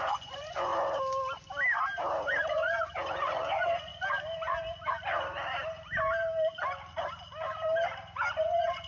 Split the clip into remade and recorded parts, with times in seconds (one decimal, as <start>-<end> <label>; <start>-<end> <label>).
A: 0.0-0.7 remade; 0.7-2.5 recorded; 2.5-3.9 remade; 3.9-8.3 recorded; 8.3-8.9 remade